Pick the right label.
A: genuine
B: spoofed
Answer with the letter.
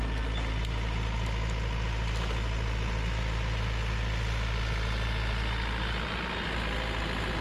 A